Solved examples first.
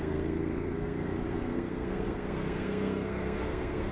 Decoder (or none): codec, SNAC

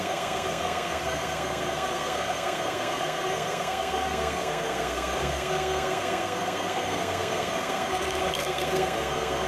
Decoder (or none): codec, SNAC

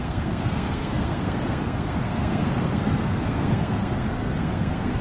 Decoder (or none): codec, SNAC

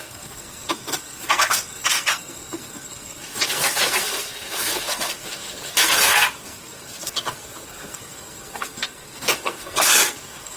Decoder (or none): codec, SNAC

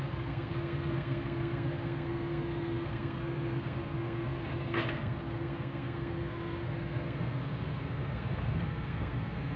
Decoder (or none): codec, SNAC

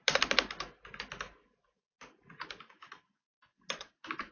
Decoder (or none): none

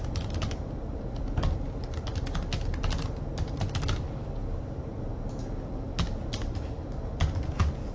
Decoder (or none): none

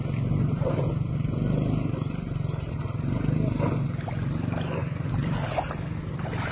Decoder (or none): none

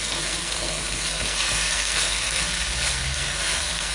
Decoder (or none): codec, SNAC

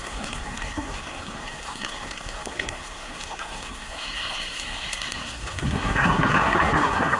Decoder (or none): codec, SNAC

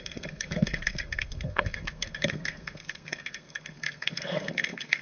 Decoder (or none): codec, SNAC